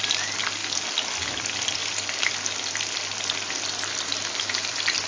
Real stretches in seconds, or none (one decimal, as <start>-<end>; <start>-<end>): 0.0-1.8